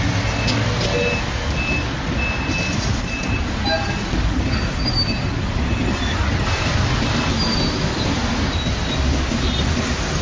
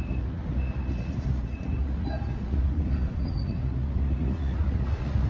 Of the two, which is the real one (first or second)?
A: first